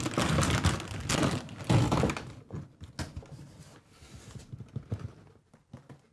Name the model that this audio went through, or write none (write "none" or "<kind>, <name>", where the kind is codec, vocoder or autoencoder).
none